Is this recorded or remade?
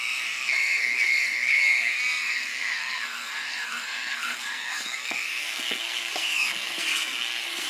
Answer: remade